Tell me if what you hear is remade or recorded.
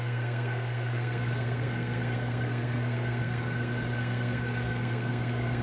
remade